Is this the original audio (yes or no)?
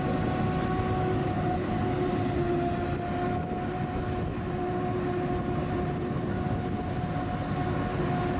yes